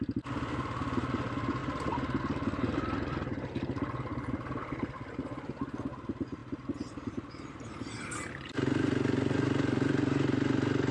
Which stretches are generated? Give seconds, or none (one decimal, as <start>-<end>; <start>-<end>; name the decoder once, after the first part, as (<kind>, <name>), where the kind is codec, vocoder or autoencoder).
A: none